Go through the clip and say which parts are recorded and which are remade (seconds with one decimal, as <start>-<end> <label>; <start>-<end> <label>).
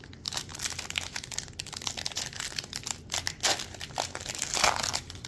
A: 0.0-5.3 recorded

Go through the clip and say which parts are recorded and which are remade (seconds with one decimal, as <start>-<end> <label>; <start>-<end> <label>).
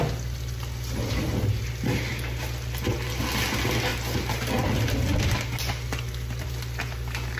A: 0.0-7.4 recorded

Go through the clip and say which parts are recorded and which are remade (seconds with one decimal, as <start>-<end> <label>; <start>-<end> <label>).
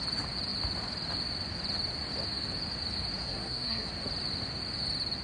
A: 0.0-3.2 recorded; 3.2-3.9 remade; 3.9-5.2 recorded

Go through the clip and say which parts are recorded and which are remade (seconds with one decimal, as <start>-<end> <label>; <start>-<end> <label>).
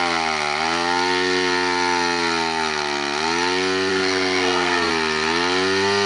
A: 0.0-3.9 recorded; 3.9-4.9 remade; 4.9-6.1 recorded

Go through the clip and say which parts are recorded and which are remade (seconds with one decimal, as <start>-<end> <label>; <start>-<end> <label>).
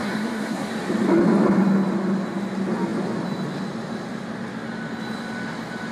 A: 0.0-0.7 remade; 0.7-5.9 recorded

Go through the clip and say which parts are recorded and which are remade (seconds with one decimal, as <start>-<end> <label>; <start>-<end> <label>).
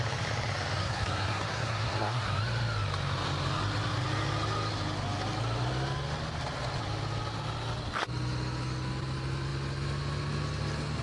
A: 0.0-0.8 recorded; 0.8-2.3 remade; 2.3-11.0 recorded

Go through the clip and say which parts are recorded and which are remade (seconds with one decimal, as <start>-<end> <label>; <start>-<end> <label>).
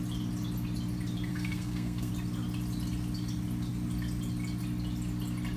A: 0.0-1.3 recorded; 1.3-2.1 remade; 2.1-5.6 recorded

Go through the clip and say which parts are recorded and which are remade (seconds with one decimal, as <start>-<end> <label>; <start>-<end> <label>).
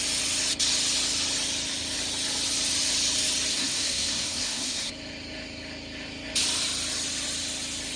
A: 0.0-3.5 recorded; 3.5-4.9 remade; 4.9-8.0 recorded